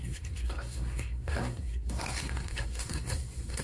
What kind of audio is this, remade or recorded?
remade